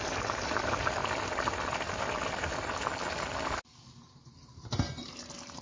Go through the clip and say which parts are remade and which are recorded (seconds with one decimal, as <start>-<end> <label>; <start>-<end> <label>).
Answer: 0.0-5.6 recorded